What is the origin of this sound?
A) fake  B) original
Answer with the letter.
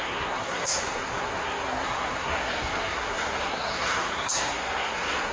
A